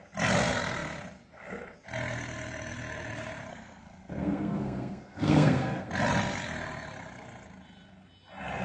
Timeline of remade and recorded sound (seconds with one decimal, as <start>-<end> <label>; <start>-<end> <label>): 0.0-3.5 recorded; 3.5-5.9 remade; 5.9-8.6 recorded